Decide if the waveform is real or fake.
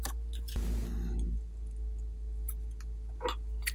real